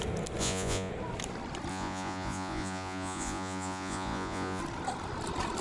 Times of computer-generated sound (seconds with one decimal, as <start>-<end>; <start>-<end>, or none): 0.4-0.9; 1.7-4.6